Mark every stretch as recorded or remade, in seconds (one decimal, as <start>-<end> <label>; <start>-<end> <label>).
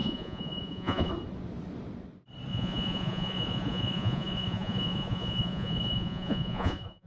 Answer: 0.0-1.1 remade; 1.1-2.5 recorded; 2.5-7.1 remade